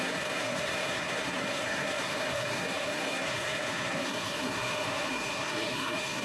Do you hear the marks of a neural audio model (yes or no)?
yes